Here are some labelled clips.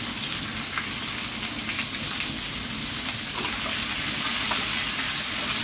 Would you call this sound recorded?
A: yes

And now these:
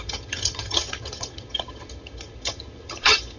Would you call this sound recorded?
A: no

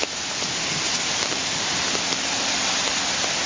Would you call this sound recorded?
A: yes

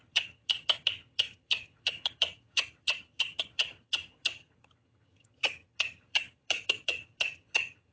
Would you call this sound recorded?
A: no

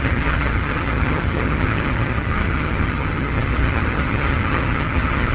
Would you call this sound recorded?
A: no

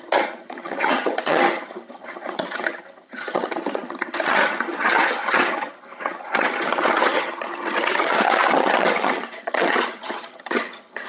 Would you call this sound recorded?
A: no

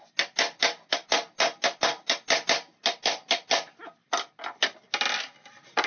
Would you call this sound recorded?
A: yes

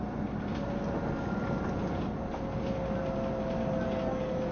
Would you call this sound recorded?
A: yes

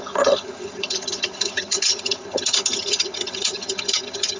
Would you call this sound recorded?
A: no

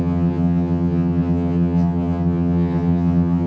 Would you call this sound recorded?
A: no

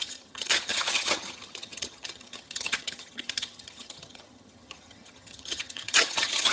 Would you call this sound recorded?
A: no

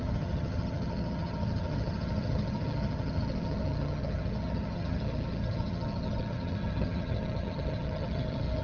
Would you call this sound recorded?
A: no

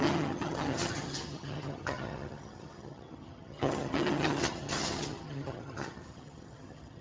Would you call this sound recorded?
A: no